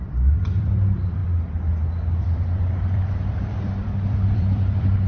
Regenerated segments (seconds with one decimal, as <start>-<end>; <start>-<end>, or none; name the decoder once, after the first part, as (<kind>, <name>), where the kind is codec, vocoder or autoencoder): 0.0-1.2 (vocoder, BigVGAN v2); 2.2-5.1